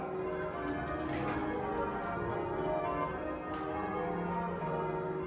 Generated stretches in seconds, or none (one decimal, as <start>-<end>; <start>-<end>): none